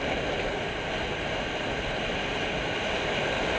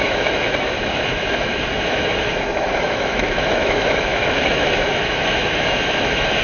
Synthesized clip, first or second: second